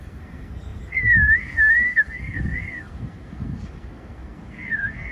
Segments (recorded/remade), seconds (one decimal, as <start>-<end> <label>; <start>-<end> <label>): 0.0-5.1 remade